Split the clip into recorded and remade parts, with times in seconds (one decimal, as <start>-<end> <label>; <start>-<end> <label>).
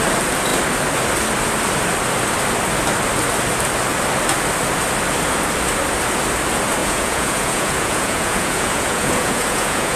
0.0-6.8 recorded; 6.8-10.0 remade